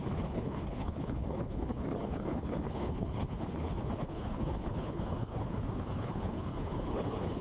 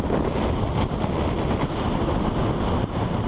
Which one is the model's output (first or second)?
first